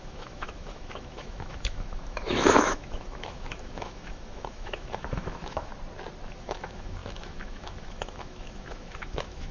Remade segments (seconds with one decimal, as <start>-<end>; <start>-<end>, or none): 0.0-5.7; 6.3-9.5